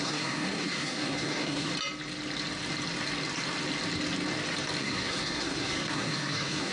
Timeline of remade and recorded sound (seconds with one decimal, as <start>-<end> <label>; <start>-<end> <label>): 0.0-1.7 remade; 1.7-4.8 recorded; 4.8-6.7 remade